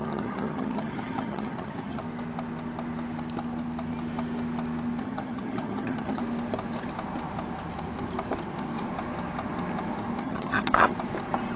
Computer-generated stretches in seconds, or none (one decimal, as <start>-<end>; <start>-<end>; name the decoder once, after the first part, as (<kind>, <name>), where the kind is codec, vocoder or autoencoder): 0.0-2.0 (vocoder, HiFi-GAN); 5.0-6.2; 10.2-10.9